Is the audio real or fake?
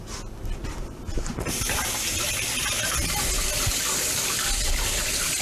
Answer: real